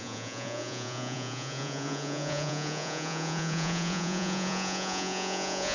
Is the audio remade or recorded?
remade